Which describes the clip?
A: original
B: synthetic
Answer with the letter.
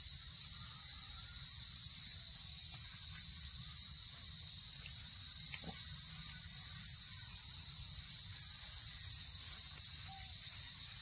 A